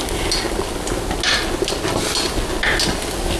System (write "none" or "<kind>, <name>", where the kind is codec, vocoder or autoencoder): none